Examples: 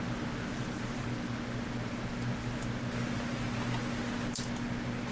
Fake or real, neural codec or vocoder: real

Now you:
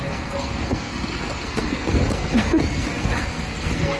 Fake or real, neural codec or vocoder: fake, codec, SNAC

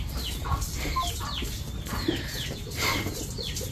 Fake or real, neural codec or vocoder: fake, vocoder, BigVGAN v2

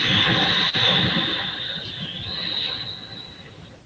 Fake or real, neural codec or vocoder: real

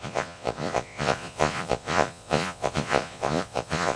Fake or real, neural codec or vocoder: fake, vocoder, Vocos